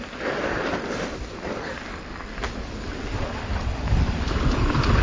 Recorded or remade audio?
remade